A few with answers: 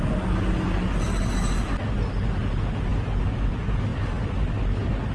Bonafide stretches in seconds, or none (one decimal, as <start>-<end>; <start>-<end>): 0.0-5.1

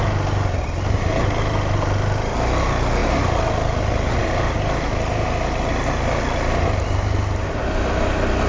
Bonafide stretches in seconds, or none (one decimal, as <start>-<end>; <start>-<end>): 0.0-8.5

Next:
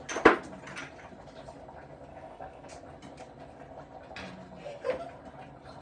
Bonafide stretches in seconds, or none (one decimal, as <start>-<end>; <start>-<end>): 0.0-2.1; 2.7-5.8